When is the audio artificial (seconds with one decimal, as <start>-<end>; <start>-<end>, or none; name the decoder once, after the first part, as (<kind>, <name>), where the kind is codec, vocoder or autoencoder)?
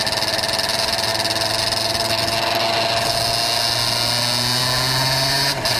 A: none